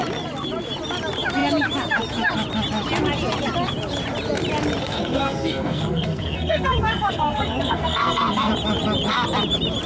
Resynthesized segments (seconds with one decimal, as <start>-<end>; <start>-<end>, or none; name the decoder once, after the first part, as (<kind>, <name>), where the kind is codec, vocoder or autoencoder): 4.8-8.5 (codec, SNAC)